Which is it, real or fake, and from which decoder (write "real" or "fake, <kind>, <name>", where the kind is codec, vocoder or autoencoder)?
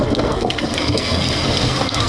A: fake, codec, SNAC